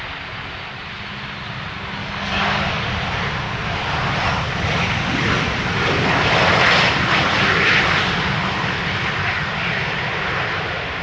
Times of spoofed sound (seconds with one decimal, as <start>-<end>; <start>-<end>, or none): 2.0-2.9